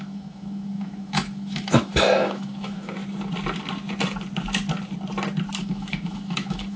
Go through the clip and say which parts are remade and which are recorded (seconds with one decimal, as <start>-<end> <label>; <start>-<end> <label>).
0.0-3.0 remade; 3.0-5.6 recorded; 5.6-6.8 remade